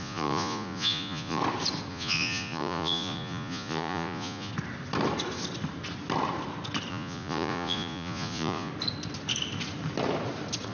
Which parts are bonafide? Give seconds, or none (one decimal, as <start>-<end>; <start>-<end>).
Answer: 1.4-1.9; 4.5-6.9; 8.7-10.7